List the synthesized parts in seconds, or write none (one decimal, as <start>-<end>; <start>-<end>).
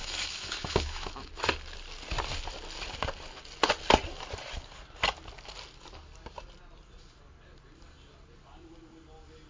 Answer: 0.0-1.3